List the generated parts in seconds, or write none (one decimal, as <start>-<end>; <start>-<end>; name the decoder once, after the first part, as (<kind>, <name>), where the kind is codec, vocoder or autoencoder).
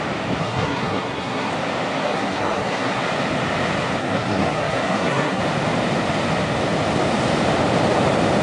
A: 0.4-1.5 (codec, SNAC); 2.0-3.0; 4.0-5.4